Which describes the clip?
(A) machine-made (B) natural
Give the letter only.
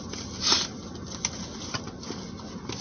B